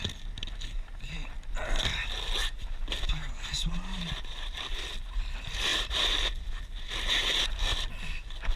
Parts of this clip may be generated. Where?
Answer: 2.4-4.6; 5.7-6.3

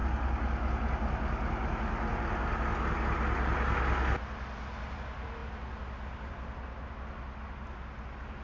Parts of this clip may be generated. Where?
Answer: none

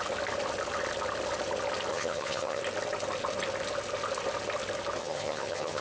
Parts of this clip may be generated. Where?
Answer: 1.9-2.6; 5.0-5.8

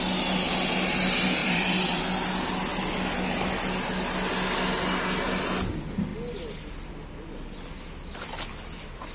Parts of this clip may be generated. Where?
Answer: 1.4-2.0

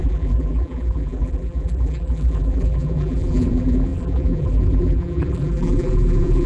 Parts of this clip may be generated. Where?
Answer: 0.0-6.5

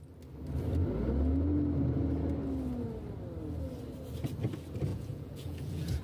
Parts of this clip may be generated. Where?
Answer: 4.9-6.0

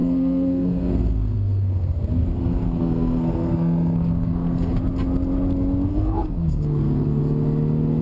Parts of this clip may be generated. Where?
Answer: 0.0-4.8; 5.9-7.2

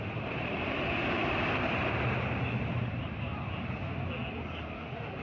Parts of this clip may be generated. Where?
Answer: 0.0-3.3